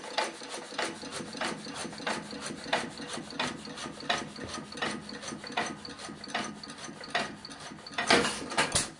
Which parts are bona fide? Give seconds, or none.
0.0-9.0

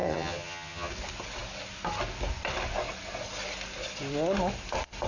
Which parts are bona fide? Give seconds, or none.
0.9-5.1

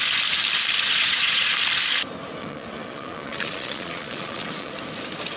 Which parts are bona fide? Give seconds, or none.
0.0-0.9; 1.5-2.4; 4.7-5.4

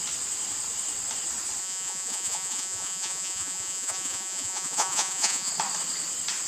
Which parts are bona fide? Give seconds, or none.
0.0-1.6; 5.5-6.5

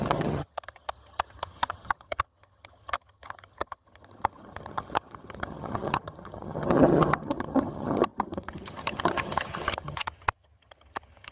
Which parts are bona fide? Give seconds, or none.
none

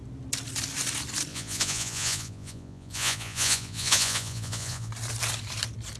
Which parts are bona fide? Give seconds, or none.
0.0-1.3; 4.9-6.0

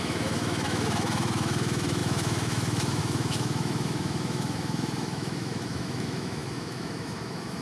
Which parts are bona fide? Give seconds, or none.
none